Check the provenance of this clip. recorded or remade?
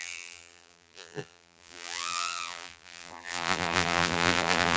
remade